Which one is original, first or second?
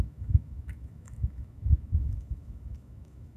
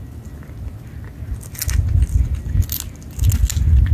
second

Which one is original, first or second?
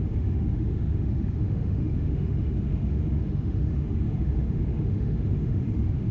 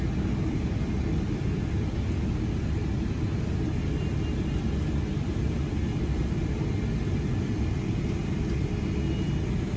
second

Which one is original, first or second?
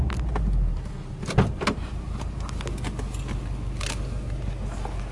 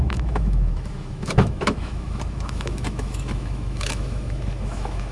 first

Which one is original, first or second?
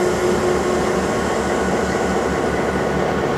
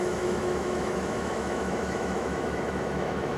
first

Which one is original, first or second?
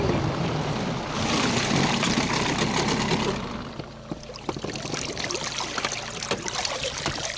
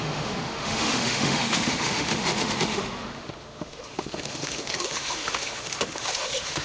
first